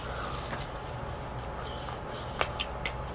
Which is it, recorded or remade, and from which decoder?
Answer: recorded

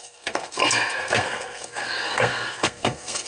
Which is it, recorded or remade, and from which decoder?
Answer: remade, codec, SNAC